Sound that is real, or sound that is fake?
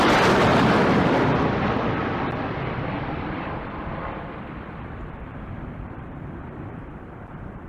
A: fake